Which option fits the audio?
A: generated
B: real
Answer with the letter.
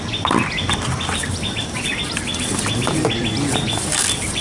A